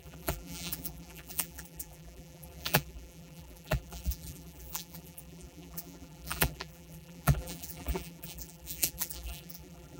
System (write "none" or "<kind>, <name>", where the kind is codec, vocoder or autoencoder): vocoder, BigVGAN v2